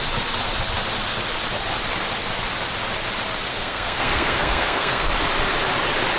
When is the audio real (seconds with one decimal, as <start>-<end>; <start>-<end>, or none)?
0.0-3.5; 5.1-6.2